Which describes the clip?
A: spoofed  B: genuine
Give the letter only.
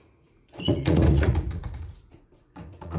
A